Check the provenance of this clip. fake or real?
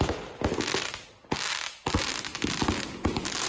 real